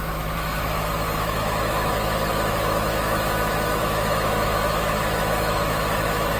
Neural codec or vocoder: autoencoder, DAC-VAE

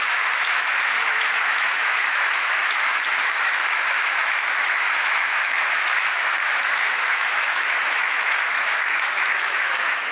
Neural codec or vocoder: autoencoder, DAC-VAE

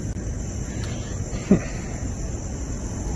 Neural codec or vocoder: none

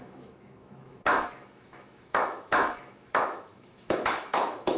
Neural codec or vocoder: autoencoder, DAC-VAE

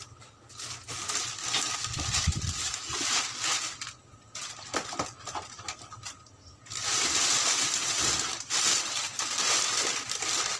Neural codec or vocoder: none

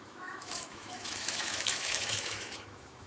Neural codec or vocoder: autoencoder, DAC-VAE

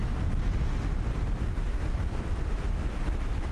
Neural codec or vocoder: none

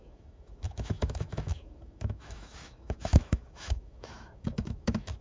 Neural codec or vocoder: autoencoder, DAC-VAE